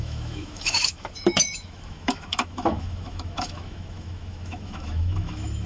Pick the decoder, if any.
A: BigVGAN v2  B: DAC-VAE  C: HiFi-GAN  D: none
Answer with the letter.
B